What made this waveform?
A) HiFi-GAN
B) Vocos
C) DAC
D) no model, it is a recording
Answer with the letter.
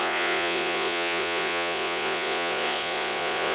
B